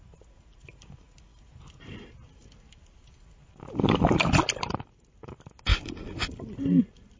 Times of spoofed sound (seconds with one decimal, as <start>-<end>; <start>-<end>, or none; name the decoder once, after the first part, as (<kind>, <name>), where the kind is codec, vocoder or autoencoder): none